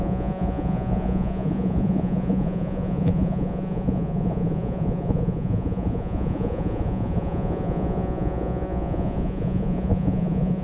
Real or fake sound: fake